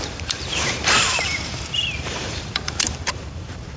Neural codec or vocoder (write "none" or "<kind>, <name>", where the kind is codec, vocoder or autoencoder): vocoder, BigVGAN v2